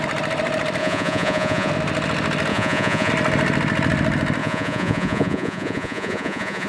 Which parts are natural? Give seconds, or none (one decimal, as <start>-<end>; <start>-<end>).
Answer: 0.0-0.8; 1.7-2.5; 3.1-4.4